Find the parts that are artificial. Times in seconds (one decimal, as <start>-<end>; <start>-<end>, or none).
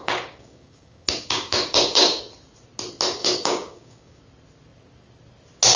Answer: 0.0-2.2; 3.2-4.2